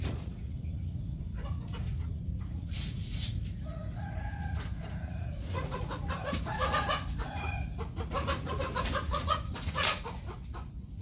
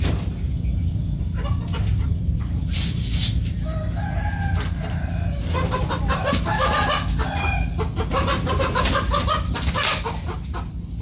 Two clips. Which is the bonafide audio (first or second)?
second